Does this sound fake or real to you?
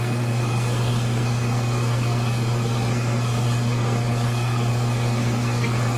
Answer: fake